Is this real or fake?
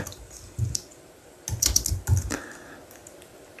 real